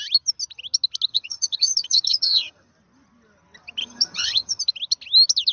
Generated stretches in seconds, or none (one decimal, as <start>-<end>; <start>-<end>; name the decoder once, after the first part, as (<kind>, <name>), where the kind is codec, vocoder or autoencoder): 1.1-2.7 (vocoder, HiFi-GAN); 3.8-4.6